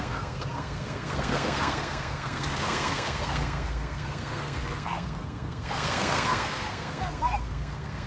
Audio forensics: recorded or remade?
remade